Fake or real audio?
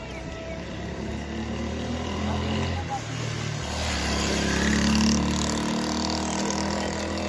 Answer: real